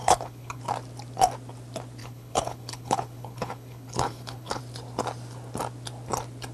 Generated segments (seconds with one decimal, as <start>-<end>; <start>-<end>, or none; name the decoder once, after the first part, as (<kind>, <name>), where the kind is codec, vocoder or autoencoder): 0.0-0.6 (codec, HILCodec); 2.0-4.6

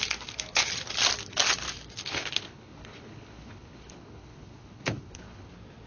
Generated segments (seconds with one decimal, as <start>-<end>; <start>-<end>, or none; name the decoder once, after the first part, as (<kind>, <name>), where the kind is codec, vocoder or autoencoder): 2.0-5.5 (codec, HILCodec)

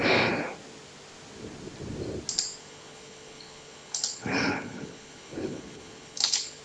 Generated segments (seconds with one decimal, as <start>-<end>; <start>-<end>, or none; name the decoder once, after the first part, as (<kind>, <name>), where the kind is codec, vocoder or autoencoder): 2.6-6.6 (codec, HILCodec)

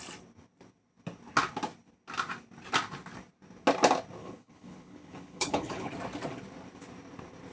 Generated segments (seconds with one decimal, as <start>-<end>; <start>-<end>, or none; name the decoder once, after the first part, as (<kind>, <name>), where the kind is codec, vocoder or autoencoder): 4.2-5.9 (codec, HILCodec)

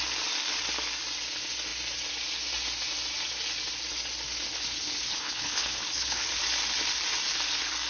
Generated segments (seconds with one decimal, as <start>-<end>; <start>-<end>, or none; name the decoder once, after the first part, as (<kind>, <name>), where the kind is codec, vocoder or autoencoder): 4.5-6.4 (codec, HILCodec)

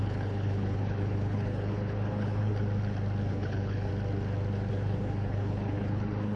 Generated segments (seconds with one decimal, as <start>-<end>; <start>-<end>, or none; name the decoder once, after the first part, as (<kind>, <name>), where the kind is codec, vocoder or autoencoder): 0.0-2.5 (codec, HILCodec); 3.3-3.9; 4.7-6.4

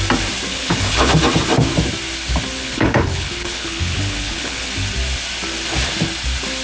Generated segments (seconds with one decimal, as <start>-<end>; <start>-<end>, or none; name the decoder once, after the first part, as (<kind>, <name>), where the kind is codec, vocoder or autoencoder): 0.5-1.1 (codec, HILCodec); 2.6-4.7